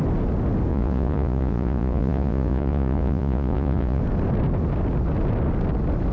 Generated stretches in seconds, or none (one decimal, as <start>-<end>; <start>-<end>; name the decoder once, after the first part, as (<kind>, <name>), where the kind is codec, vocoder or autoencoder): 0.7-4.0 (vocoder, Vocos)